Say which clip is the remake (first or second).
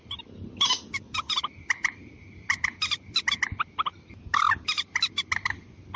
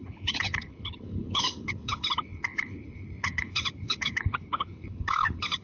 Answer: second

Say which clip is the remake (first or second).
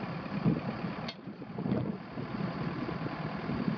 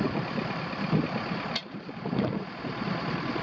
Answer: second